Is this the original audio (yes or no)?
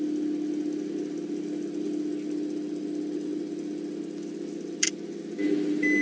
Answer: yes